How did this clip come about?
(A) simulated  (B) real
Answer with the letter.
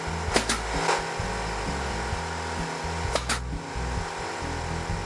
B